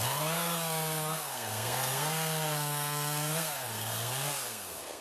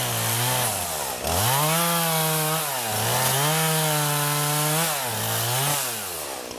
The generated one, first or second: first